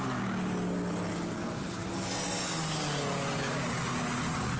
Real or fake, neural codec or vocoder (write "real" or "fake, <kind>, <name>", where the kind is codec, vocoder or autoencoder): real